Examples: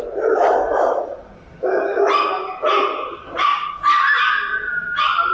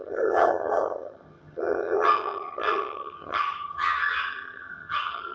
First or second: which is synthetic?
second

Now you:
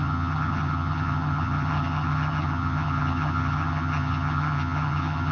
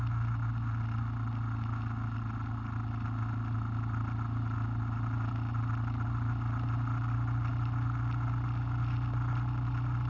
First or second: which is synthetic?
first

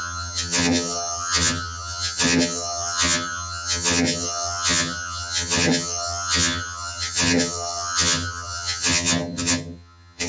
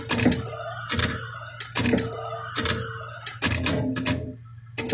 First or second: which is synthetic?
first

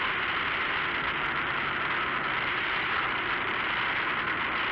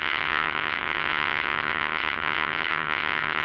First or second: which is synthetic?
second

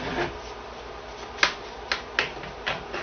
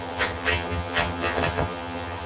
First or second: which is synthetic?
second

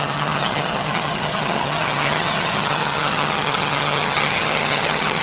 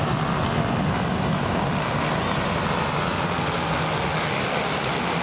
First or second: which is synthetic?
first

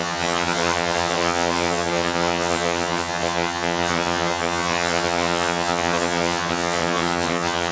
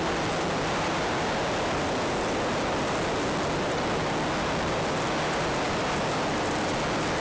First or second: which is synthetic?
first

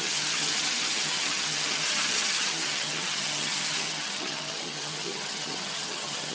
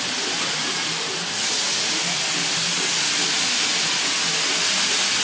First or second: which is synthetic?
first